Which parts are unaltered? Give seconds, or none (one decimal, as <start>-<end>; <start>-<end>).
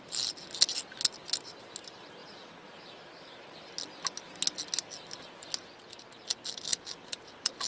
0.0-7.7